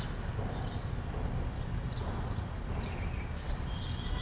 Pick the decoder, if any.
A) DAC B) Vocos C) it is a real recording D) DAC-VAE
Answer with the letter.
C